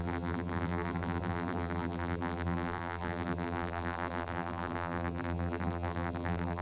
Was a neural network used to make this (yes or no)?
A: yes